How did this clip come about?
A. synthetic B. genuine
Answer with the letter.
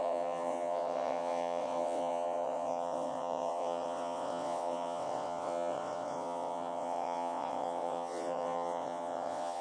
A